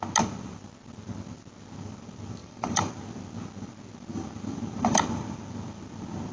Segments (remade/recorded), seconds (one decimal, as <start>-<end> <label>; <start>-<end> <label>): 0.0-2.4 recorded; 2.4-2.9 remade; 2.9-6.3 recorded